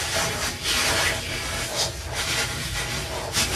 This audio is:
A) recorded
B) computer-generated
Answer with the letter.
A